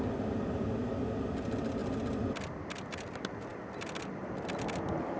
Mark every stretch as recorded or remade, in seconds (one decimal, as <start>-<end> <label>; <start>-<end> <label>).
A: 0.0-5.2 recorded